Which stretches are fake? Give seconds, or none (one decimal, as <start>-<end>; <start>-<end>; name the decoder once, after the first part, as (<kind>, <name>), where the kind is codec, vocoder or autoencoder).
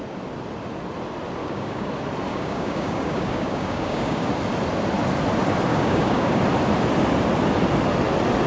1.4-1.9 (codec, DAC); 2.3-4.3; 5.7-6.4